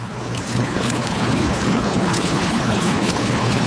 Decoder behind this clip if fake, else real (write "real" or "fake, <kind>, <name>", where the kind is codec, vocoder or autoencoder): fake, codec, HILCodec